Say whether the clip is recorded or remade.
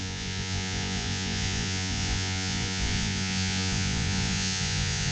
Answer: remade